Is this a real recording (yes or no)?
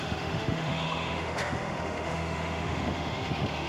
no